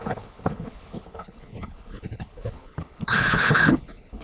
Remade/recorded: remade